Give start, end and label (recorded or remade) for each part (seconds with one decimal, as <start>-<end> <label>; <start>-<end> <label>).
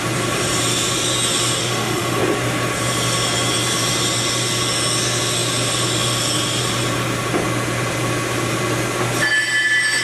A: 0.0-1.6 recorded; 1.6-2.2 remade; 2.2-10.0 recorded